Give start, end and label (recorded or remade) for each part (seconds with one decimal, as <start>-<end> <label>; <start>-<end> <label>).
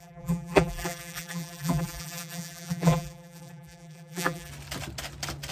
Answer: 0.0-4.5 remade; 4.5-5.5 recorded